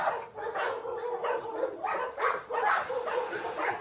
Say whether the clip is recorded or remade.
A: recorded